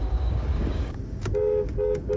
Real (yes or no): no